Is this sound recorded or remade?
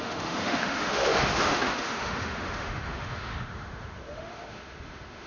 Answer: remade